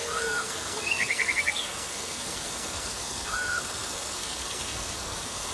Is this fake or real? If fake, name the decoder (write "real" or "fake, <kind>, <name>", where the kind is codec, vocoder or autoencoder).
fake, codec, SNAC